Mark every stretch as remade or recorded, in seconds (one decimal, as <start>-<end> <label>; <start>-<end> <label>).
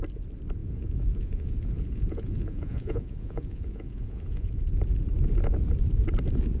0.0-0.6 recorded; 0.6-4.6 remade; 4.6-6.6 recorded